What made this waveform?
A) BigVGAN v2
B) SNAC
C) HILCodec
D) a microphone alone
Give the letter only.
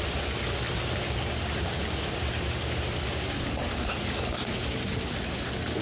D